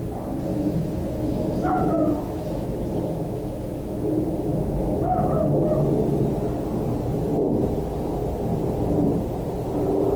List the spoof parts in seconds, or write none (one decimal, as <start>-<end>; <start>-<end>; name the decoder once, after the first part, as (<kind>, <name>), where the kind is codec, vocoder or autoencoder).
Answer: 0.5-5.6 (autoencoder, DAC-VAE)